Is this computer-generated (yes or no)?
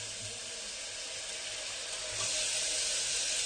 no